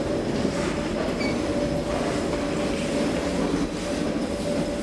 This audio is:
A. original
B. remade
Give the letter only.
A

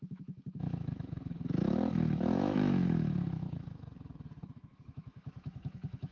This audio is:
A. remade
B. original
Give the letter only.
A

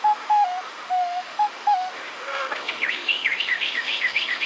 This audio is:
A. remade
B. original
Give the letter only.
A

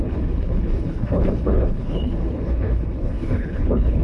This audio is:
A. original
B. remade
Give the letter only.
B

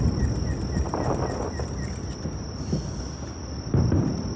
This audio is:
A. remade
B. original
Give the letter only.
B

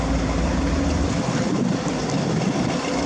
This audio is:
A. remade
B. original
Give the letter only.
B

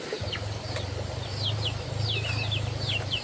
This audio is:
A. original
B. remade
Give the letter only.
A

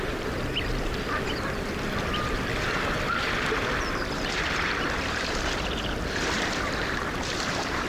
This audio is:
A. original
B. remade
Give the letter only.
B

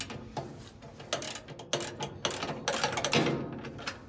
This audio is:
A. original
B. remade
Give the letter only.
A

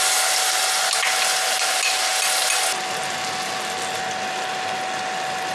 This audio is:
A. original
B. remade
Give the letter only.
A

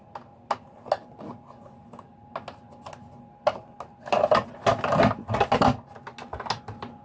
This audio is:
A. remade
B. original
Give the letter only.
B